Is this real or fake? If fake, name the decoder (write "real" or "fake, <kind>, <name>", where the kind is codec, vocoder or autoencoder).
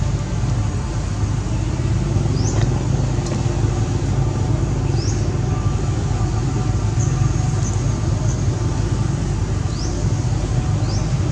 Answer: real